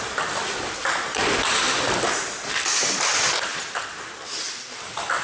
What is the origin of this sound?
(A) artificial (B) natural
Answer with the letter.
A